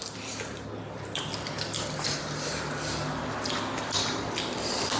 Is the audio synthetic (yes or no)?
no